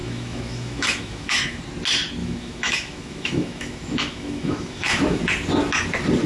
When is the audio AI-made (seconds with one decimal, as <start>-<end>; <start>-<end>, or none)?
0.0-1.6; 2.2-5.2

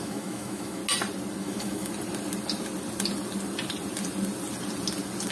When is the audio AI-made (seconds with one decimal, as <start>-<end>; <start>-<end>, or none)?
0.0-0.8; 1.4-1.9

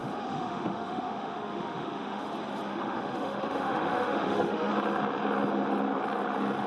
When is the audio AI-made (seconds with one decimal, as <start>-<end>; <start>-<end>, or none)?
0.0-2.3; 2.7-4.7

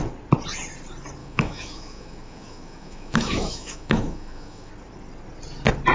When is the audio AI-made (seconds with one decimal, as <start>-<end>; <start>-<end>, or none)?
1.2-4.7

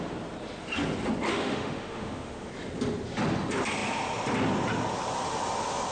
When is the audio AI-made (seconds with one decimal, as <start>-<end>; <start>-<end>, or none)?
1.3-2.5

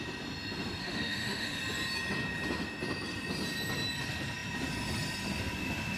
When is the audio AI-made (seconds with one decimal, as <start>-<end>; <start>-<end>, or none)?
0.8-1.6